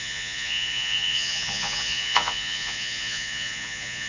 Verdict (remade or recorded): remade